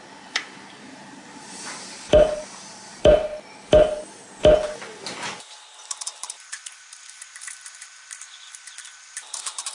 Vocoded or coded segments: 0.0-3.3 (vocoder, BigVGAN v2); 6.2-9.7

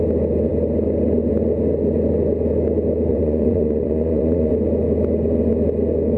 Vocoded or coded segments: 3.1-4.5 (vocoder, Vocos)

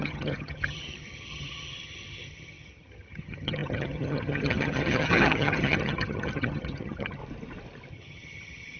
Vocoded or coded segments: 0.0-7.2 (vocoder, HiFi-GAN); 7.9-8.8

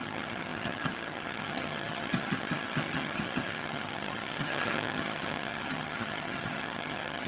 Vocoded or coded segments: 0.0-7.3 (vocoder, HiFi-GAN)

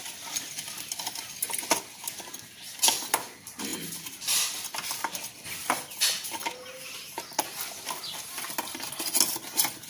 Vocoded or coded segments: none